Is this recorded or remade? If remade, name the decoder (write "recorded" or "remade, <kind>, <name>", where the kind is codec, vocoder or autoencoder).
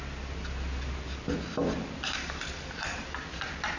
recorded